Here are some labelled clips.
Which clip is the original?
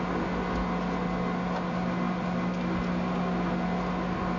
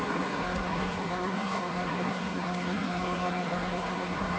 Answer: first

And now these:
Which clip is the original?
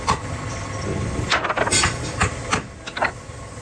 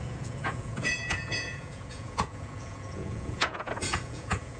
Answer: first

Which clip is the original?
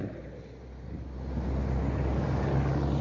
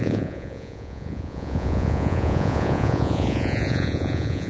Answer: first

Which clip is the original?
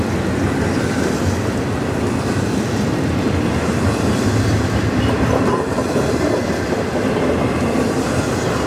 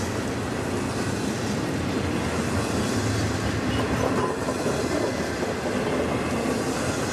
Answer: second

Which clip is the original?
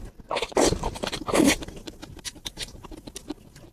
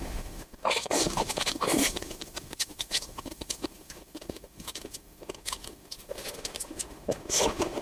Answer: first